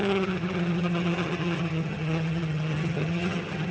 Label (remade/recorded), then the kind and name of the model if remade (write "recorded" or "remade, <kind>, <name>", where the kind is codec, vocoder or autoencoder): remade, vocoder, HiFi-GAN